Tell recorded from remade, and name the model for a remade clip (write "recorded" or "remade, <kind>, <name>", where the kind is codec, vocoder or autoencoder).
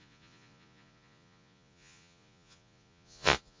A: remade, vocoder, Vocos